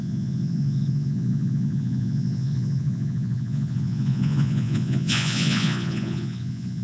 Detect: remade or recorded remade